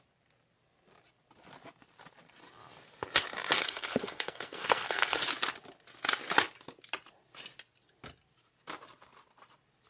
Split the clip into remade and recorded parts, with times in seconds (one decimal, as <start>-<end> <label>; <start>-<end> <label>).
0.0-3.6 recorded; 3.6-5.2 remade; 5.2-9.9 recorded

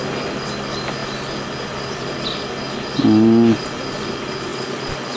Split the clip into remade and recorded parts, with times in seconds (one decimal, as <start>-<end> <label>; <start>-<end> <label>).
0.0-4.5 recorded; 4.5-5.2 remade